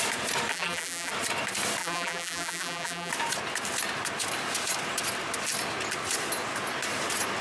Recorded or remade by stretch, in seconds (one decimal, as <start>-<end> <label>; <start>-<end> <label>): 0.0-0.5 recorded; 0.5-1.1 remade; 1.1-1.8 recorded; 1.8-3.1 remade; 3.1-7.4 recorded